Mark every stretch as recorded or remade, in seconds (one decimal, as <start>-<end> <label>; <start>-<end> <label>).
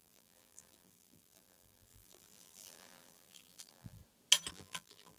0.0-4.0 remade; 4.0-4.5 recorded; 4.5-5.2 remade